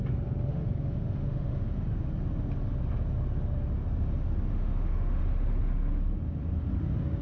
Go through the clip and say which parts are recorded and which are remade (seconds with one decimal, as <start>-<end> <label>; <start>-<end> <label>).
0.0-0.5 recorded; 0.5-1.7 remade; 1.7-4.5 recorded; 4.5-5.2 remade; 5.2-7.2 recorded

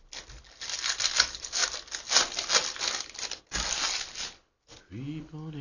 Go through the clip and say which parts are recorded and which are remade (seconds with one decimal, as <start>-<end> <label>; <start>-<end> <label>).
0.0-5.6 recorded

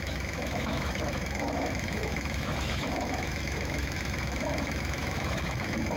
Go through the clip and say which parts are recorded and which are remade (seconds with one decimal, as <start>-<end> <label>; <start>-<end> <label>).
0.0-6.0 remade

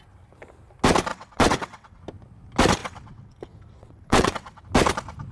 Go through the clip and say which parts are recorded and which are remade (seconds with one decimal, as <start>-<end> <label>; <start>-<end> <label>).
0.0-1.1 recorded; 1.1-2.0 remade; 2.0-2.8 recorded; 2.8-4.6 remade; 4.6-5.3 recorded

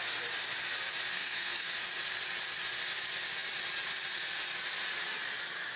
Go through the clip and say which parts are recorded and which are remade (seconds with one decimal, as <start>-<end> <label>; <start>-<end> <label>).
0.0-1.1 recorded; 1.1-1.8 remade; 1.8-5.8 recorded